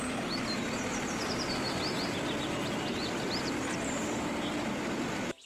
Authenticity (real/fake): real